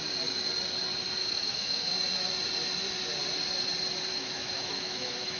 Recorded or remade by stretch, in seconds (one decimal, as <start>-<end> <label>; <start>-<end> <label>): 0.0-1.2 recorded; 1.2-1.9 remade; 1.9-4.1 recorded; 4.1-5.4 remade